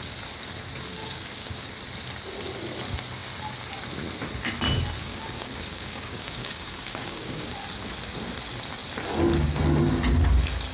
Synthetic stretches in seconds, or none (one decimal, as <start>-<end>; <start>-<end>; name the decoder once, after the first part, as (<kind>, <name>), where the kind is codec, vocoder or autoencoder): 1.0-1.7 (codec, DAC); 5.0-7.5